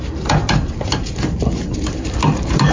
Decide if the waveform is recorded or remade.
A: remade